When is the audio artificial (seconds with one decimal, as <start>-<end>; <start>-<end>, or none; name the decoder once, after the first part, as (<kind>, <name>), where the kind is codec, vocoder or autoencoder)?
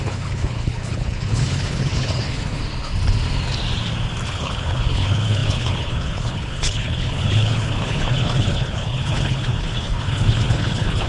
0.0-2.6 (codec, HILCodec); 4.3-11.1